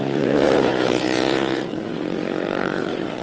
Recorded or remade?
remade